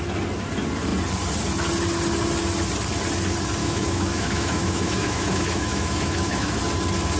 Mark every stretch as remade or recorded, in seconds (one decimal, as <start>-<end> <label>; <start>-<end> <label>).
0.0-3.6 recorded; 3.6-6.6 remade; 6.6-7.2 recorded